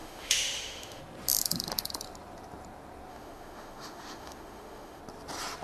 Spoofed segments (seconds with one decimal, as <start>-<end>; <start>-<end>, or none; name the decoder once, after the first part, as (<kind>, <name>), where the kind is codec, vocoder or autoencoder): 0.0-1.0 (autoencoder, DAC-VAE); 3.1-5.0